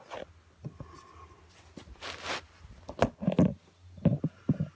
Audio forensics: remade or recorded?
recorded